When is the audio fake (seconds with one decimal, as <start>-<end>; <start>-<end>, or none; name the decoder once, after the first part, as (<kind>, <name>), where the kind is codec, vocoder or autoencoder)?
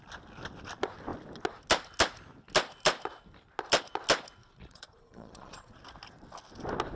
4.4-5.8 (vocoder, Vocos)